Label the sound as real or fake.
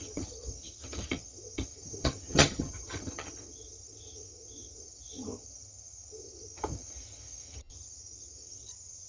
fake